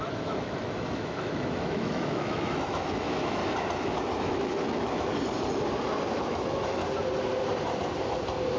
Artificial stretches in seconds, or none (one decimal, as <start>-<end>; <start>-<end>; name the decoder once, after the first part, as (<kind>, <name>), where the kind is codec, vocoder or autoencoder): 0.0-3.4 (autoencoder, DAC-VAE); 4.2-5.1; 6.1-6.8